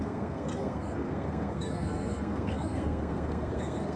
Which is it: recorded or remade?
remade